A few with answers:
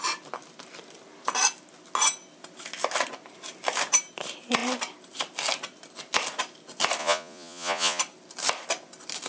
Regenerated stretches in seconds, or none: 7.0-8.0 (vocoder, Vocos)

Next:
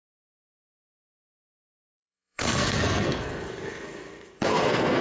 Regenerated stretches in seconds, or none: 0.0-5.0 (codec, SNAC)